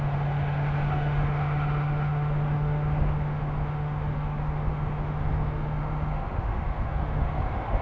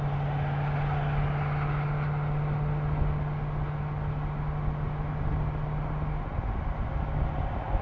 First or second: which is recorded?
second